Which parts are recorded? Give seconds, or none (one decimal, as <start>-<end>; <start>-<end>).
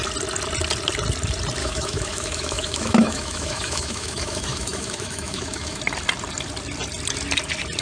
0.0-1.6; 5.8-7.8